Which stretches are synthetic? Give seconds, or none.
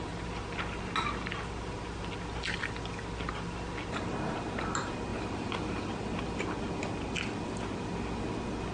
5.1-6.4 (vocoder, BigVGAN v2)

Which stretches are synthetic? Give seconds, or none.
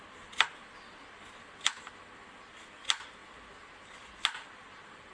none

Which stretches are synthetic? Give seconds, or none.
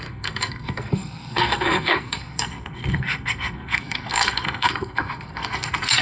0.0-6.0 (codec, SNAC)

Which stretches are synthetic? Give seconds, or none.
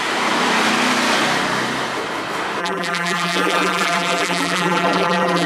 2.6-5.5 (vocoder, BigVGAN v2)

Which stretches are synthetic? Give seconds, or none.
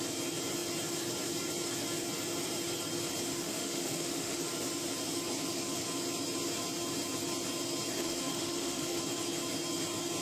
3.3-4.4 (autoencoder, DAC-VAE); 8.0-9.0